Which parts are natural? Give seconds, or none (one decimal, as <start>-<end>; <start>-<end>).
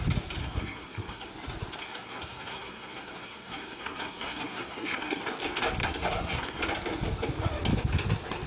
0.0-0.4; 1.3-1.8; 5.2-5.8; 6.6-8.5